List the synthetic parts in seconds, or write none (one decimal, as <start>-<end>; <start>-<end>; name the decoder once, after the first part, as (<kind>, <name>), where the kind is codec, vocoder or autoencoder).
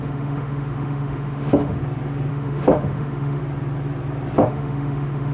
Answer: 0.0-1.8 (autoencoder, DAC-VAE); 2.3-3.4; 4.5-5.3